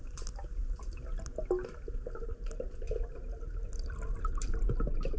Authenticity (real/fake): real